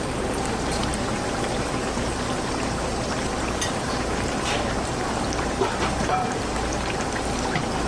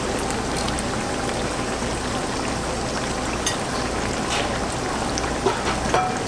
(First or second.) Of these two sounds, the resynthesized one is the first